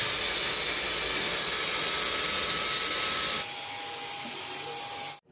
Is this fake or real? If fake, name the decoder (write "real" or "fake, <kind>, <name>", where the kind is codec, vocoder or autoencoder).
real